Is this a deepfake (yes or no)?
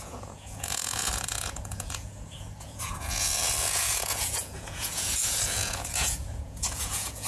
yes